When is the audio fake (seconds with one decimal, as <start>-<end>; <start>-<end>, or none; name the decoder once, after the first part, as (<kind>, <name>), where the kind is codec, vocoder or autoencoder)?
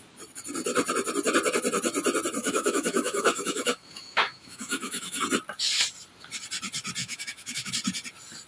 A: 2.4-5.2 (autoencoder, DAC-VAE); 7.0-7.7